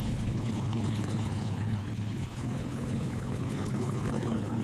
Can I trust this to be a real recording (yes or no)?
no